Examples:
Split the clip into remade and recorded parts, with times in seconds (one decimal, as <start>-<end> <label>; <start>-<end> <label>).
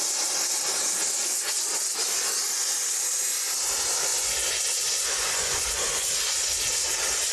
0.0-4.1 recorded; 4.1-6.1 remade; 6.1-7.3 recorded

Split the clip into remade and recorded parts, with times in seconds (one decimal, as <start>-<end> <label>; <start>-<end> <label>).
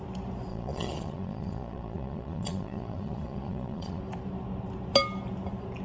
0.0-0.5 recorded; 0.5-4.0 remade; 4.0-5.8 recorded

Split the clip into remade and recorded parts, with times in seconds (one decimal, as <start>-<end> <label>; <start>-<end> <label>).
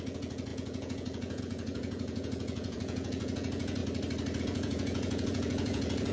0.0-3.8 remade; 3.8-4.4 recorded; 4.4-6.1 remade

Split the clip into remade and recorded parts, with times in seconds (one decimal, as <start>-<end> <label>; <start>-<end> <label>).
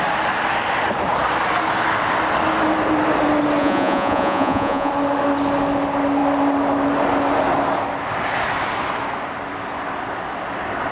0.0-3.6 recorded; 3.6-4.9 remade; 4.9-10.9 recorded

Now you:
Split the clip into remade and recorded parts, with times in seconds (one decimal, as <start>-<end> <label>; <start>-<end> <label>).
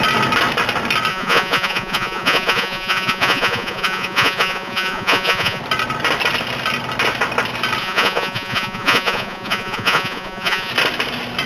0.0-1.1 recorded; 1.1-5.6 remade; 5.6-7.8 recorded; 7.8-10.7 remade; 10.7-11.5 recorded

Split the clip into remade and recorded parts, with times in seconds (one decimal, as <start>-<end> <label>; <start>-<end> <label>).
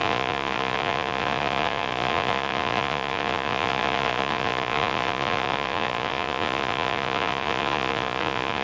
0.0-8.6 remade